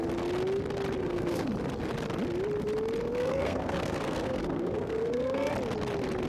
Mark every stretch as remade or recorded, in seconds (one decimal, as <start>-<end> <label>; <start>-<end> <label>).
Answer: 0.0-1.0 recorded; 1.0-1.5 remade; 1.5-3.0 recorded; 3.0-5.5 remade; 5.5-6.3 recorded